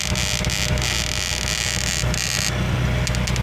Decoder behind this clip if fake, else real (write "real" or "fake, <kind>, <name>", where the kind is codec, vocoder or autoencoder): real